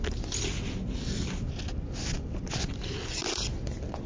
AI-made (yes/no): no